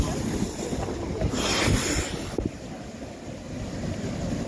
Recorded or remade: recorded